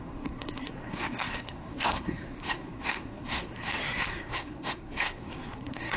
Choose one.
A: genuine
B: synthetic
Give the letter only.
B